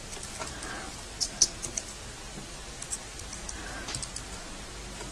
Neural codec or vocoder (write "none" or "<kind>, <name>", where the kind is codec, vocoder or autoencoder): none